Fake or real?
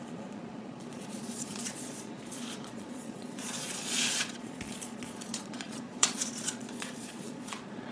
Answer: fake